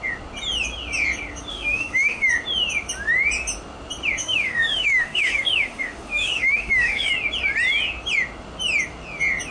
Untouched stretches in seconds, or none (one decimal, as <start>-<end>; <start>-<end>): 0.0-1.5; 2.3-4.2; 7.1-9.5